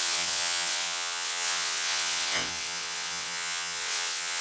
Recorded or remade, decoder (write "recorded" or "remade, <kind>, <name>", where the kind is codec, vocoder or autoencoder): remade, vocoder, WaveNeXt